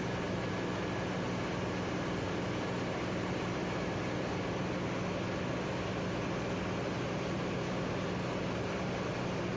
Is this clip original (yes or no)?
yes